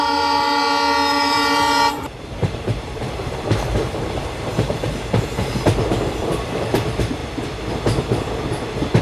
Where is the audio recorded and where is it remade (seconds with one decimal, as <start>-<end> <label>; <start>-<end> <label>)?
0.0-0.6 remade; 0.6-1.1 recorded; 1.1-7.2 remade; 7.2-9.0 recorded